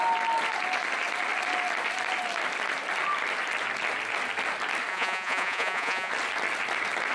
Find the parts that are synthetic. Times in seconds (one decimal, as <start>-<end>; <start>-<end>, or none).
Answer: 4.9-6.1